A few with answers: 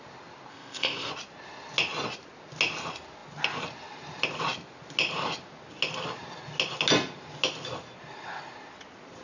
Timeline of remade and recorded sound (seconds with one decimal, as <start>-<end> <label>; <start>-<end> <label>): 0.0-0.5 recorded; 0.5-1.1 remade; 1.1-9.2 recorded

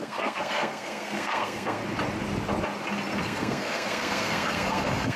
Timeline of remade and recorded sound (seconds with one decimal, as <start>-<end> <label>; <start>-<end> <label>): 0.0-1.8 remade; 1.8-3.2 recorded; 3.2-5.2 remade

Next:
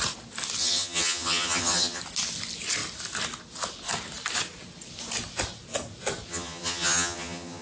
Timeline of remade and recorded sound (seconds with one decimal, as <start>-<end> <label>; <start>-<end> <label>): 0.0-0.6 recorded; 0.6-2.0 remade; 2.0-6.3 recorded; 6.3-7.6 remade